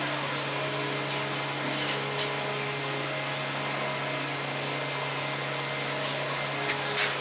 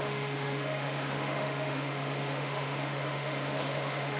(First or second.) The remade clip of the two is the second